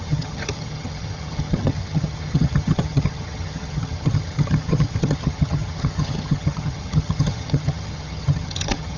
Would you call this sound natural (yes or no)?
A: no